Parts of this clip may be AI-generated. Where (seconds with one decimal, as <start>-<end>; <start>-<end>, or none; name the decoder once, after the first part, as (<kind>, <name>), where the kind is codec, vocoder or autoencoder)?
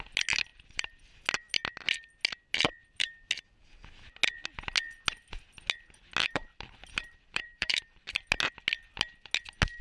0.5-1.0 (vocoder, BigVGAN v2); 2.8-3.3; 6.2-8.2